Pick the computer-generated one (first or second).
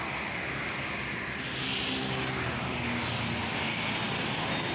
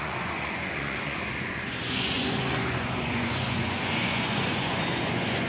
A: second